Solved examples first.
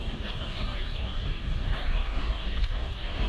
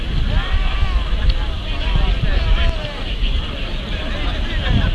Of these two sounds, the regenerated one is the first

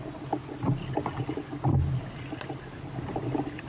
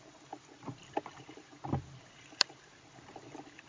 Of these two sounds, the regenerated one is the second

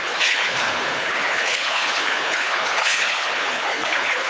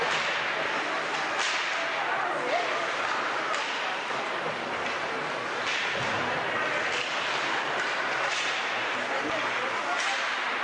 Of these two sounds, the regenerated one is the first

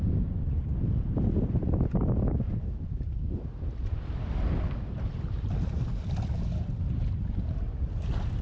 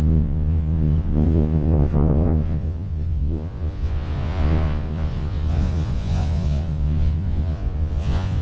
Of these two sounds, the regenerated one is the second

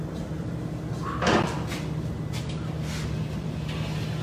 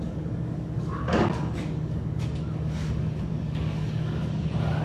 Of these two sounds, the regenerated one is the second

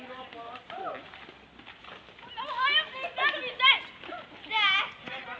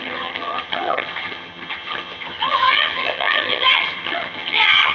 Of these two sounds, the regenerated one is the second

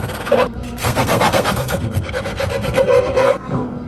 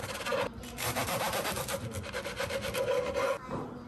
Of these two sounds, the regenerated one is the first